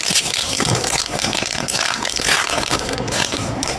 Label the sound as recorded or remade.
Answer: remade